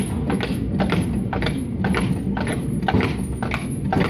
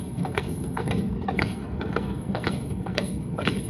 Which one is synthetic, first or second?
second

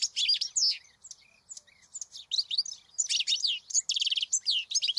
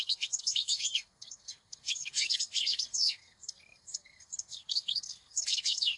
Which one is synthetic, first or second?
second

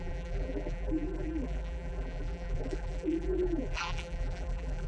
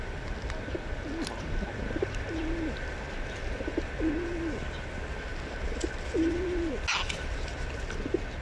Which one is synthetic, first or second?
first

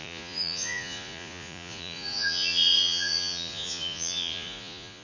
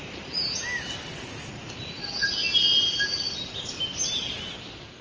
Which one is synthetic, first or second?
first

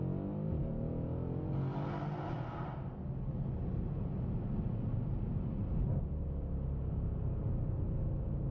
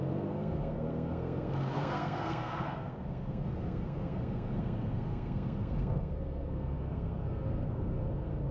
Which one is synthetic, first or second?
second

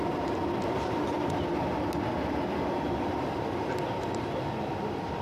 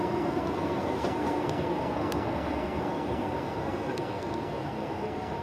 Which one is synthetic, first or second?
second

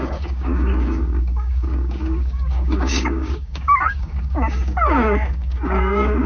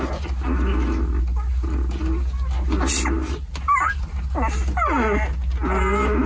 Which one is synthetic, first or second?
first